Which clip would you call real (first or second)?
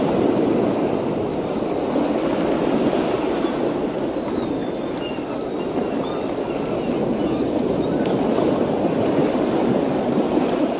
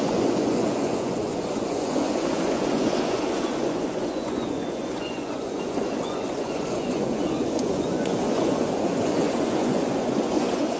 first